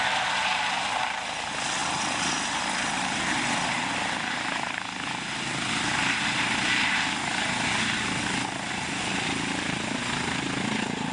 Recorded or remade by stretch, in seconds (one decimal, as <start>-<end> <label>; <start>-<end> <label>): 0.0-11.1 recorded

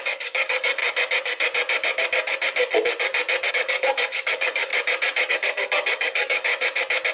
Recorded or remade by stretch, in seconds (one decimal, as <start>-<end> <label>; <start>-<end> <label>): 0.0-0.8 remade; 0.8-3.5 recorded; 3.5-4.7 remade; 4.7-5.3 recorded; 5.3-6.5 remade; 6.5-7.1 recorded

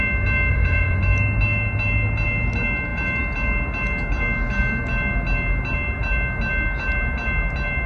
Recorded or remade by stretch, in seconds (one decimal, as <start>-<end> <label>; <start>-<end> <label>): 0.0-0.5 recorded; 0.5-1.0 remade; 1.0-7.9 recorded

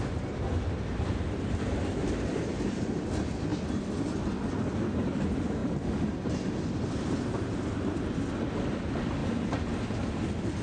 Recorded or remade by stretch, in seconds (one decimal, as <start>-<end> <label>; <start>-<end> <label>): 0.0-9.2 recorded; 9.2-9.7 remade; 9.7-10.6 recorded

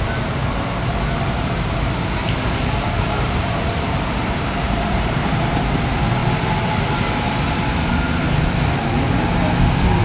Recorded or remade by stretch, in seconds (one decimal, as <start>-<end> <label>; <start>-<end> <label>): 0.0-0.4 remade; 0.4-1.3 recorded; 1.3-6.2 remade; 6.2-10.0 recorded

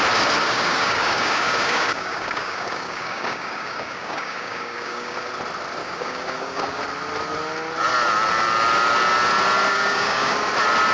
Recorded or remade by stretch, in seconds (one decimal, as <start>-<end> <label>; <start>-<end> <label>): 0.0-0.4 recorded; 0.4-5.3 remade; 5.3-5.8 recorded; 5.8-6.8 remade; 6.8-9.7 recorded; 9.7-10.3 remade; 10.3-10.9 recorded

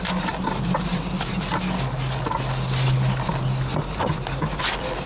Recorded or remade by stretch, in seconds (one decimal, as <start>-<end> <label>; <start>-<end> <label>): 0.0-5.1 recorded

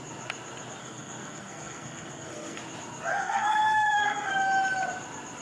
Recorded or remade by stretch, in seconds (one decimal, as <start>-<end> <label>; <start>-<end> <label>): 0.0-0.8 recorded; 0.8-2.6 remade; 2.6-3.1 recorded; 3.1-4.3 remade; 4.3-5.4 recorded